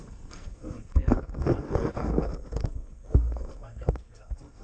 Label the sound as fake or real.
fake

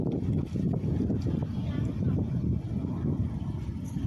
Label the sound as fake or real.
real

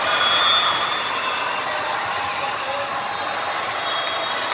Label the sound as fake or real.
real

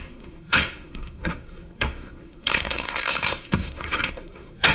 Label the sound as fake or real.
fake